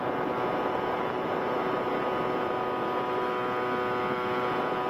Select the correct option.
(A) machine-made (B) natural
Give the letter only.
B